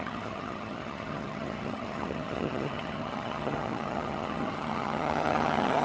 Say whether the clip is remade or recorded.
remade